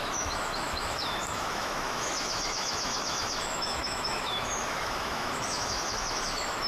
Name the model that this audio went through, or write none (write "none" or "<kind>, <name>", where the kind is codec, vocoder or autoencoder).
autoencoder, DAC-VAE